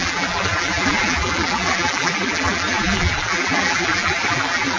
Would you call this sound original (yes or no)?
no